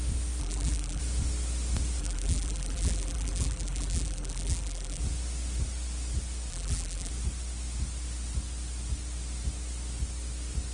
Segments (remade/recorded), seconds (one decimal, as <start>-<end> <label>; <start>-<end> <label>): 0.0-0.4 recorded; 0.4-1.0 remade; 1.0-2.0 recorded; 2.0-5.0 remade; 5.0-6.5 recorded; 6.5-7.1 remade; 7.1-10.7 recorded